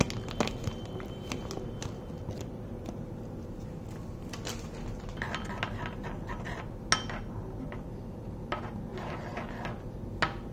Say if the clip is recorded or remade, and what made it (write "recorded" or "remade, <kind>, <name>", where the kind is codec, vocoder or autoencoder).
recorded